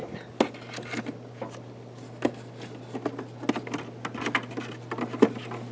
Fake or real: real